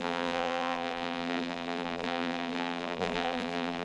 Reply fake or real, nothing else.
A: fake